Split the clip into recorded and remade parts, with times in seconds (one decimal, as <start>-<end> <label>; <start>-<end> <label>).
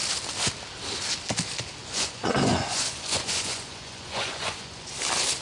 0.0-1.8 recorded; 1.8-4.9 remade; 4.9-5.4 recorded